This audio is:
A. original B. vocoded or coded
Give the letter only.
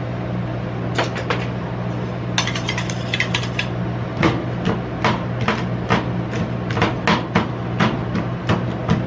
A